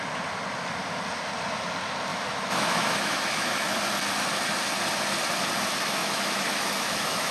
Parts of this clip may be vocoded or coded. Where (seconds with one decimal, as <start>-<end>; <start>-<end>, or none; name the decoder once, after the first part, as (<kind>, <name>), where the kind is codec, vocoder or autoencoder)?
2.1-3.8 (autoencoder, DAC-VAE); 6.0-7.3